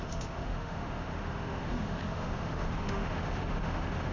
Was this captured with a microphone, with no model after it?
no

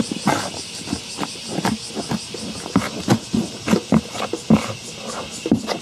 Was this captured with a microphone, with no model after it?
yes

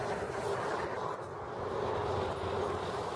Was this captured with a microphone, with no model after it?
yes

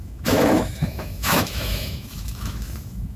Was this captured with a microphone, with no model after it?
no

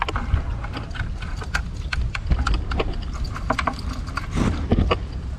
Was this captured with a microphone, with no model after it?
yes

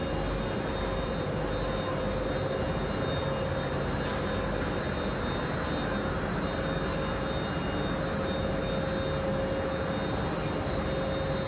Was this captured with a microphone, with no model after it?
yes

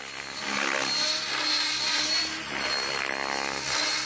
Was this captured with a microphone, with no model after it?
yes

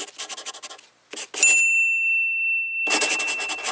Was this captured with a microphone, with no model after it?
yes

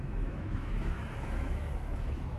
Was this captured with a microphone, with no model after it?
no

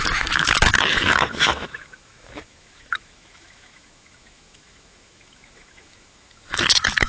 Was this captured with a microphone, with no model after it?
no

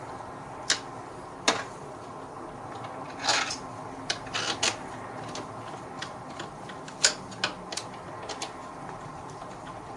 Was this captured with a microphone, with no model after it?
yes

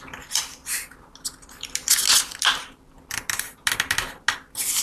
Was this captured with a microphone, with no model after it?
yes